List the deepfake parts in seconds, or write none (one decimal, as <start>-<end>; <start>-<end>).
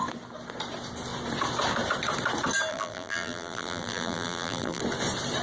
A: 2.7-4.8